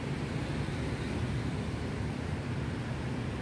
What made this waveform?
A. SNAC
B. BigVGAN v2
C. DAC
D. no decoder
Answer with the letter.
D